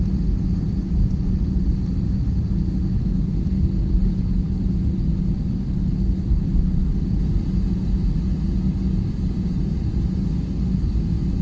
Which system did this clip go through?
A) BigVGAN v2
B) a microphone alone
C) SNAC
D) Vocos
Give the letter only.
B